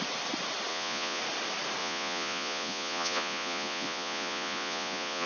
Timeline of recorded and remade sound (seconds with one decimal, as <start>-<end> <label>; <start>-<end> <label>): 0.0-0.7 recorded; 0.7-1.2 remade; 1.2-1.8 recorded; 1.8-5.3 remade